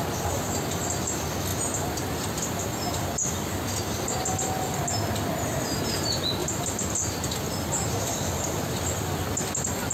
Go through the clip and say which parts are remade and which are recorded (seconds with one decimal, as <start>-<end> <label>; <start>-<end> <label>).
0.0-1.5 recorded; 1.5-2.6 remade; 2.6-6.4 recorded; 6.4-8.6 remade; 8.6-9.9 recorded